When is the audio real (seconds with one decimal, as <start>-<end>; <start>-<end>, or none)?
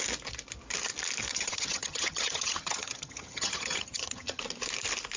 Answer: 0.0-1.3; 4.4-5.2